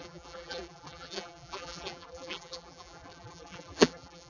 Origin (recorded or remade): remade